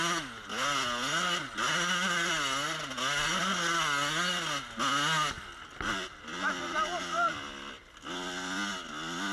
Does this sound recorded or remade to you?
recorded